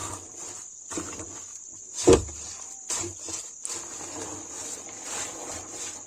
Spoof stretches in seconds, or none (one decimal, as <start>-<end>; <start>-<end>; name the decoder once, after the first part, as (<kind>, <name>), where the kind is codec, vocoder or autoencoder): 0.0-1.2 (vocoder, BigVGAN v2)